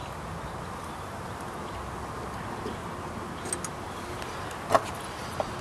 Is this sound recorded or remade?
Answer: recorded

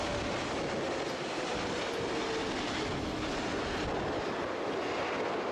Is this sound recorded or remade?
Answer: recorded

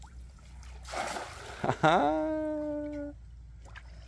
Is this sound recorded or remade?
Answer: recorded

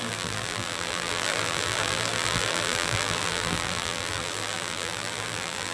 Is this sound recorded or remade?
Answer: remade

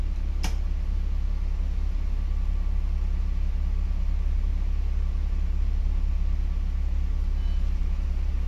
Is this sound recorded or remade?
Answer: recorded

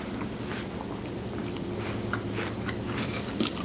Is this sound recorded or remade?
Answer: remade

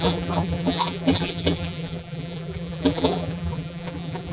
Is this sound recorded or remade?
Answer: remade